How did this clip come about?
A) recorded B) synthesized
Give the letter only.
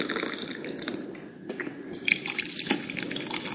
A